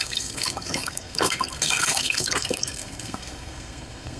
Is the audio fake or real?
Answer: fake